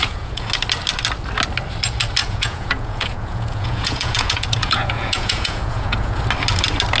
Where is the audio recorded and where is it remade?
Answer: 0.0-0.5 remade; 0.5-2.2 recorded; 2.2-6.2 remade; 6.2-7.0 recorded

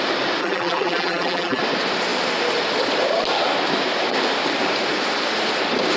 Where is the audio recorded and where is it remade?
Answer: 0.0-0.4 recorded; 0.4-1.6 remade; 1.6-6.0 recorded

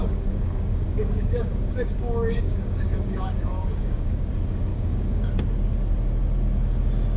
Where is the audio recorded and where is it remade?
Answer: 0.0-4.3 remade; 4.3-4.7 recorded; 4.7-5.2 remade; 5.2-7.2 recorded

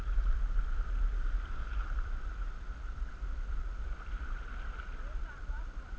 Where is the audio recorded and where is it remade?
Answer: 0.0-1.7 recorded; 1.7-3.1 remade; 3.1-3.6 recorded; 3.6-4.1 remade; 4.1-4.9 recorded; 4.9-6.0 remade

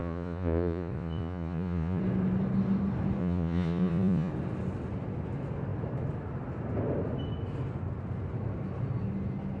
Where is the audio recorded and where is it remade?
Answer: 0.0-2.0 remade; 2.0-3.2 recorded; 3.2-4.3 remade; 4.3-9.6 recorded